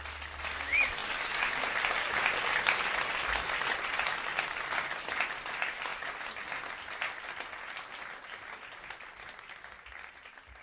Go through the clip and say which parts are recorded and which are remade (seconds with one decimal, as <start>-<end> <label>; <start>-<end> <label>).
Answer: 0.0-10.6 recorded